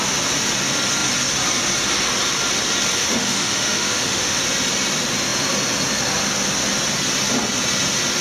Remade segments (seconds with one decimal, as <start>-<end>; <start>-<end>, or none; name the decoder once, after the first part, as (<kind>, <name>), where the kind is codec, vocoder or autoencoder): 3.0-4.4 (autoencoder, DAC-VAE)